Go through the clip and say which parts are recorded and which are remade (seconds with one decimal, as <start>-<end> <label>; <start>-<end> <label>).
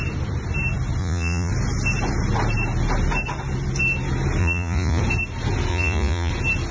0.0-1.0 recorded; 1.0-1.5 remade; 1.5-4.4 recorded; 4.4-5.0 remade; 5.0-5.7 recorded; 5.7-6.3 remade; 6.3-6.7 recorded